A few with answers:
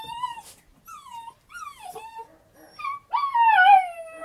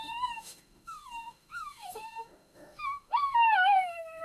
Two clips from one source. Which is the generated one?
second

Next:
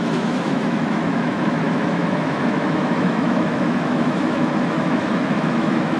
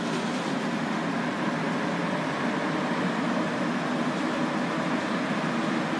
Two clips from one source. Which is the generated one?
first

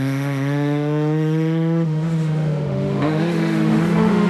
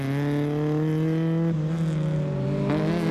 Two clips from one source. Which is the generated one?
first